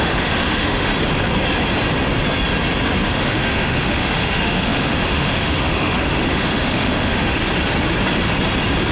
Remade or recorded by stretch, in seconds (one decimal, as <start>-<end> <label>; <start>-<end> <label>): 0.0-0.9 remade; 0.9-3.1 recorded; 3.1-7.4 remade; 7.4-8.9 recorded